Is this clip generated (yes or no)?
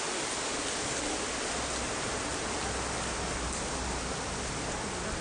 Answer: no